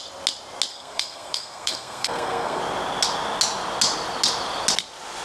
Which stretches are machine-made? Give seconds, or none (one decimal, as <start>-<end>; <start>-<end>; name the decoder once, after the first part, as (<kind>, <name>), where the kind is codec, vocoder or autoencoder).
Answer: 0.7-2.6 (codec, SNAC)